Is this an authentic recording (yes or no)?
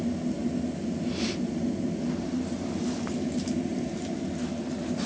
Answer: yes